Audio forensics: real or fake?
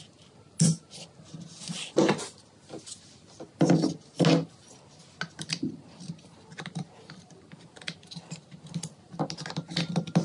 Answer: real